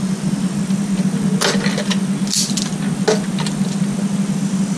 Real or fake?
real